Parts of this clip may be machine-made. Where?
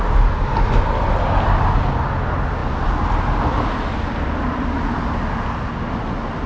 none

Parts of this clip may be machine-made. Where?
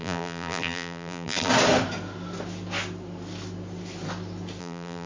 0.0-1.5; 4.6-5.1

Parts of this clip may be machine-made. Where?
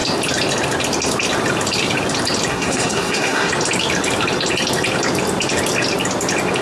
2.5-3.5